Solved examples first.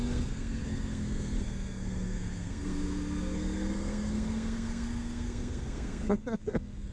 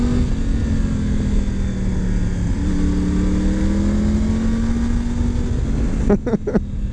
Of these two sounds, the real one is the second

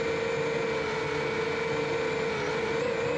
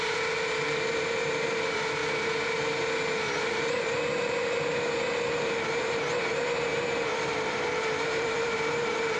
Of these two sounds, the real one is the first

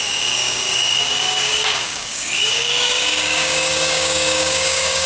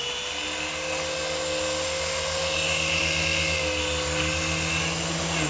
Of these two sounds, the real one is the second